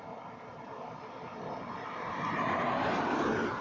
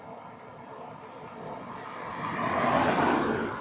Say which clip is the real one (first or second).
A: second